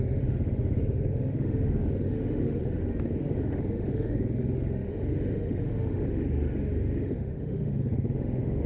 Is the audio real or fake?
fake